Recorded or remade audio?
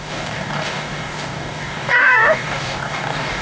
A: remade